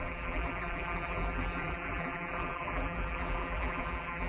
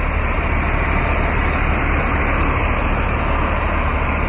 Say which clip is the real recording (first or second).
second